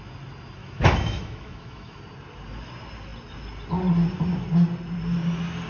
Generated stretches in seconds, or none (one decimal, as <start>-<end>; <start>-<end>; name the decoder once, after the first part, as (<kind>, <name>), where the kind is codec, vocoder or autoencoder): 0.6-2.0 (autoencoder, DAC-VAE)